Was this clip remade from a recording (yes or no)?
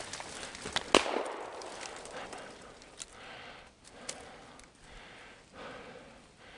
no